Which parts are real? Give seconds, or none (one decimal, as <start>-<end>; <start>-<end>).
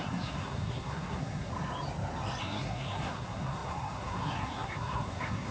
1.5-2.4